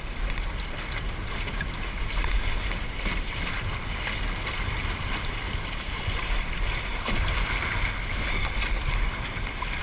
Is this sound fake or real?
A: real